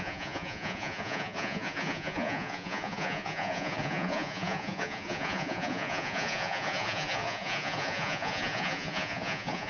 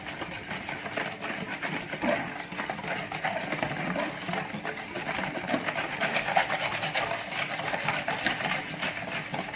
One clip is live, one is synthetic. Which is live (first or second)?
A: second